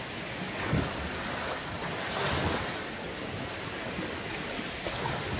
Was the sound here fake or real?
real